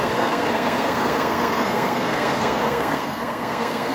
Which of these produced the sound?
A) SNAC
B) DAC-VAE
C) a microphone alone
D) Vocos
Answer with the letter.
A